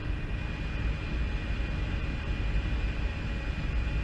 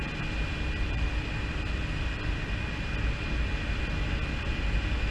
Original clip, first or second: first